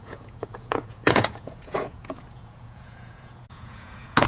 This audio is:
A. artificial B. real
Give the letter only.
A